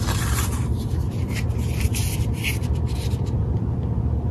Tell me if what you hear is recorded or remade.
remade